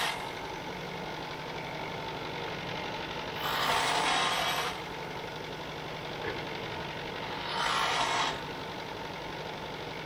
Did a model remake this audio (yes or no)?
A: no